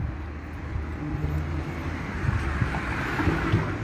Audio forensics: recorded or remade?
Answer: recorded